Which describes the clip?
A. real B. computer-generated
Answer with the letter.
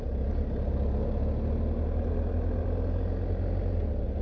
A